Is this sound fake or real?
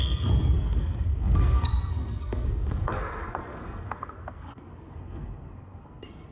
fake